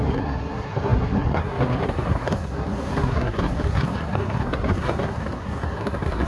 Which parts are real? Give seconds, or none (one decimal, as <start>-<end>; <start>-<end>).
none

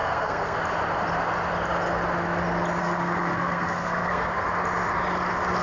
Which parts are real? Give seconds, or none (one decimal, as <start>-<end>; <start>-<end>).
0.6-2.8; 4.3-5.6

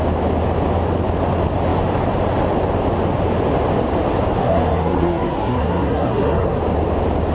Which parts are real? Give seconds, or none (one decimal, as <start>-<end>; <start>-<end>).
0.0-4.4; 6.6-7.3

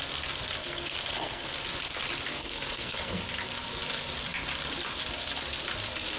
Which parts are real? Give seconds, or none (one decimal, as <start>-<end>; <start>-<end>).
0.0-0.6; 1.5-2.3; 3.2-6.2

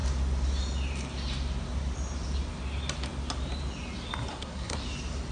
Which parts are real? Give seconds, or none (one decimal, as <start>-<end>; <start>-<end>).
0.0-4.3; 4.8-5.3

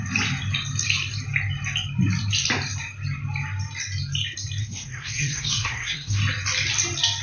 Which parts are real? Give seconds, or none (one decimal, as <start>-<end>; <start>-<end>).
0.0-4.6; 6.2-7.2